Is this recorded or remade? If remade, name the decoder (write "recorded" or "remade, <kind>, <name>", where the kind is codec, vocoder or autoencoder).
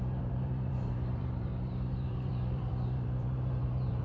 remade, vocoder, BigVGAN v2